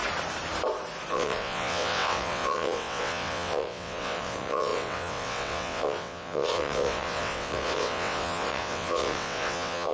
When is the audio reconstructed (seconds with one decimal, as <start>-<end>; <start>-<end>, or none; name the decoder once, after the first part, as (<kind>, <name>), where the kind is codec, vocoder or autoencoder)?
1.1-9.9 (vocoder, WaveNeXt)

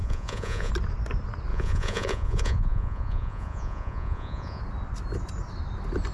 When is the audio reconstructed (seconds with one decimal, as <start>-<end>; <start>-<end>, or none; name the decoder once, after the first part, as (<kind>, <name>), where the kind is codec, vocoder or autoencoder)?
0.0-0.7 (vocoder, Vocos); 1.5-4.6

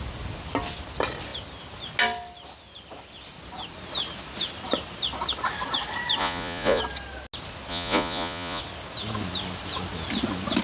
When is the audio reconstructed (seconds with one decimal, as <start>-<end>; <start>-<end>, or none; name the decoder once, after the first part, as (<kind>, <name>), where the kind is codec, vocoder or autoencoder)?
6.2-6.8 (vocoder, Vocos); 7.7-8.6

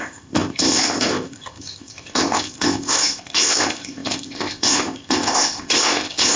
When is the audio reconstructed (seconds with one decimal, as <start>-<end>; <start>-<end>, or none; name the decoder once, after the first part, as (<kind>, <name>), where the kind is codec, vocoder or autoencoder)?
0.0-6.4 (codec, ZipCodec)

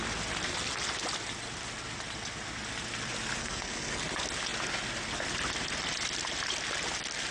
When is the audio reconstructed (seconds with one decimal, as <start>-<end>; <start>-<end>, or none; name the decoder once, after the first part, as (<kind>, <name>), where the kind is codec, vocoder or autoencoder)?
3.4-4.0 (codec, SNAC)

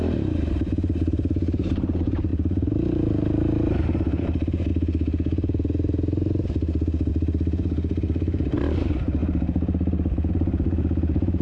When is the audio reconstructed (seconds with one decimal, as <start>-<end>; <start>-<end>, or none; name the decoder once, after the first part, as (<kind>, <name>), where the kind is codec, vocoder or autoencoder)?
0.0-4.7 (vocoder, BigVGAN v2); 7.1-11.4

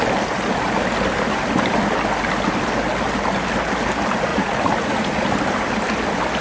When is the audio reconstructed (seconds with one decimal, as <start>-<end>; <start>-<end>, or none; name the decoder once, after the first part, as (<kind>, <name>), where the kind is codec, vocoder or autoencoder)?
4.3-5.2 (vocoder, Vocos)